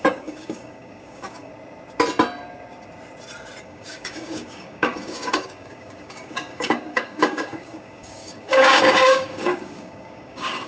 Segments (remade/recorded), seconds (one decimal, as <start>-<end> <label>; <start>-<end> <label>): 0.0-1.5 remade; 1.5-3.6 recorded; 3.6-10.7 remade

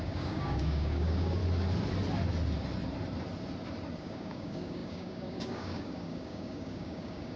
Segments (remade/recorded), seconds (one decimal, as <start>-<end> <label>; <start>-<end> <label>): 0.0-1.4 remade; 1.4-4.0 recorded; 4.0-7.4 remade

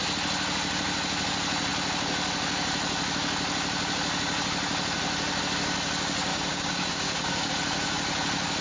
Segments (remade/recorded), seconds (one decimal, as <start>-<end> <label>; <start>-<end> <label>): 0.0-6.3 recorded; 6.3-7.5 remade; 7.5-8.6 recorded

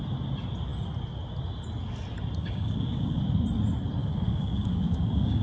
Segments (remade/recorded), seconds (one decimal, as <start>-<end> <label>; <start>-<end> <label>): 0.0-2.4 recorded; 2.4-3.2 remade; 3.2-4.0 recorded; 4.0-5.4 remade

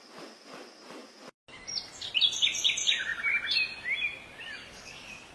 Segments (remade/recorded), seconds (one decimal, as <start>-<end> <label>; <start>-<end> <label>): 0.0-4.6 recorded; 4.6-5.3 remade

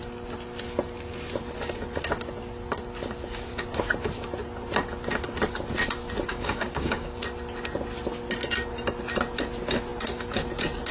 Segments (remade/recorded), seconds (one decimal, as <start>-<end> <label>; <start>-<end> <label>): 0.0-6.3 recorded; 6.3-7.2 remade; 7.2-10.9 recorded